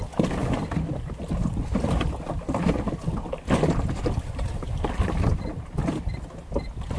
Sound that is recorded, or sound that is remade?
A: recorded